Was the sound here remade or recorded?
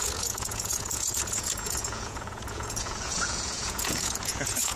remade